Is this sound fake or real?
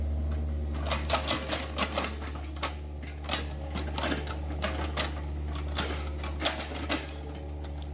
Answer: real